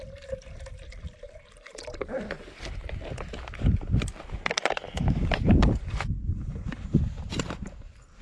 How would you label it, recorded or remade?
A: remade